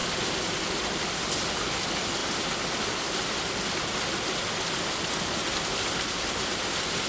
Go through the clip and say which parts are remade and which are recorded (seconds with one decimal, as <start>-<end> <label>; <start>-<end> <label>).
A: 0.0-7.1 recorded